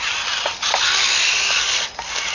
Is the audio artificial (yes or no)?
no